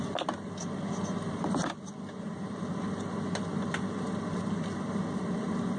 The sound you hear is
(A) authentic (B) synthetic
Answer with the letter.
A